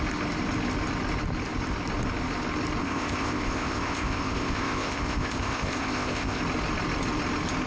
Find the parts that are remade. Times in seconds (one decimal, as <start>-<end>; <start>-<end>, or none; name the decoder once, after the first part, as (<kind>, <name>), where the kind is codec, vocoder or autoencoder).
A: 2.8-6.4 (codec, ZipCodec)